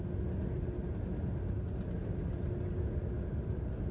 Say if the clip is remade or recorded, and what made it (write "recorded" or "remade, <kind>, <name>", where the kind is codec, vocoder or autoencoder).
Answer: recorded